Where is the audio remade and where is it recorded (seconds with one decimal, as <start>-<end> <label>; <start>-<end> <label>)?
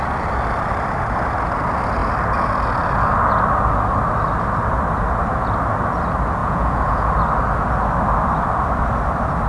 0.0-6.4 recorded; 6.4-7.1 remade; 7.1-9.5 recorded